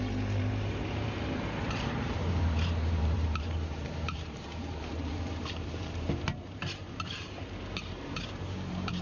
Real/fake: fake